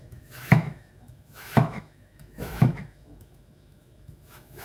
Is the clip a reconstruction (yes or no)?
yes